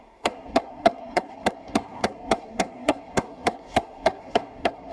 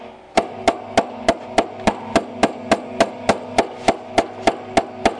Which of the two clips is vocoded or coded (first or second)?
first